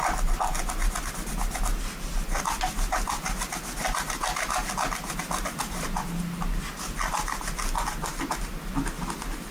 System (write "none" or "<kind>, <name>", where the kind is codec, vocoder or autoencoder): none